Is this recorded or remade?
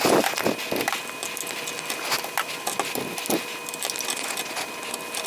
recorded